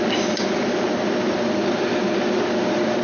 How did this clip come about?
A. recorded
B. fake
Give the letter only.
A